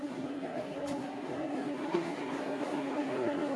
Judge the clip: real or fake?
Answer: fake